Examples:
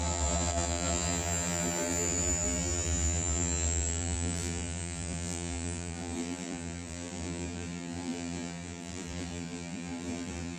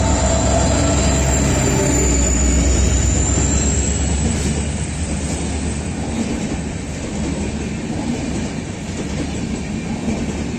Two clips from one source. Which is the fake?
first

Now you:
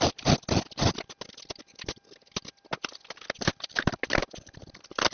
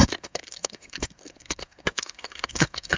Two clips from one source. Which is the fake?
second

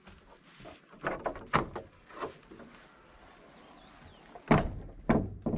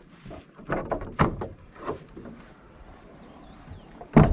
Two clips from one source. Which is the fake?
second